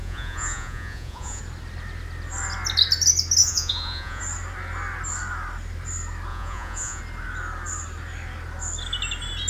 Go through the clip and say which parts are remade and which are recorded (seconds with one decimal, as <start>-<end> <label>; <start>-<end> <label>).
0.0-1.4 remade; 1.4-3.4 recorded; 3.4-4.2 remade; 4.2-6.3 recorded; 6.3-7.0 remade; 7.0-9.5 recorded